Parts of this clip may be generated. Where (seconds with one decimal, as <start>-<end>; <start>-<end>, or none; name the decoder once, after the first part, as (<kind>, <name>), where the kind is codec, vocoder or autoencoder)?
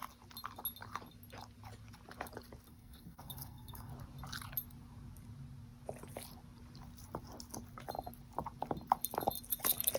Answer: 2.7-3.9 (codec, SNAC)